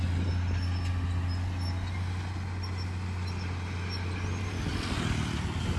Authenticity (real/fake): real